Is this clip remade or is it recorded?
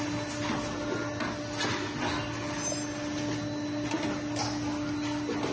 recorded